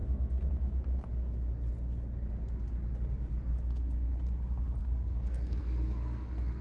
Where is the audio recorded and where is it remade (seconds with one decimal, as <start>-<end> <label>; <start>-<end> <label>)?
0.0-0.5 remade; 0.5-4.8 recorded; 4.8-6.6 remade

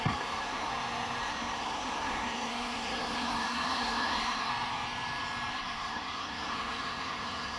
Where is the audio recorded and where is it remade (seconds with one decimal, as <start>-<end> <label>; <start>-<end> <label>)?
0.0-0.7 remade; 0.7-1.2 recorded; 1.2-4.5 remade; 4.5-5.5 recorded; 5.5-7.6 remade

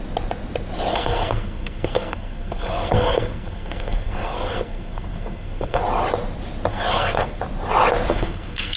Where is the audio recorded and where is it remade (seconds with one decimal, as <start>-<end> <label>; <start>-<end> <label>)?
0.0-0.9 recorded; 0.9-5.8 remade; 5.8-6.7 recorded; 6.7-7.4 remade; 7.4-8.1 recorded; 8.1-8.8 remade

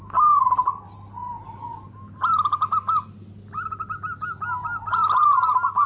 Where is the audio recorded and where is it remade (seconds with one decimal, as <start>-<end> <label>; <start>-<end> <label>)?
0.0-5.9 recorded

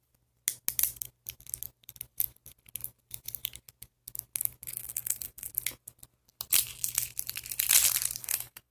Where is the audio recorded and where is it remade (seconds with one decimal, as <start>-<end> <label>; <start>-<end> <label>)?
0.0-4.7 recorded; 4.7-5.5 remade; 5.5-8.2 recorded; 8.2-8.7 remade

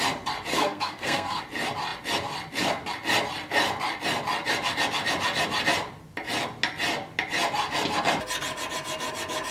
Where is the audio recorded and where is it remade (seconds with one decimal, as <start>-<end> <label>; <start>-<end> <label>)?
0.0-0.5 recorded; 0.5-1.4 remade; 1.4-9.5 recorded